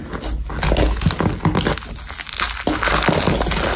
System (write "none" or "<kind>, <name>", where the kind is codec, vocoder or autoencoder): none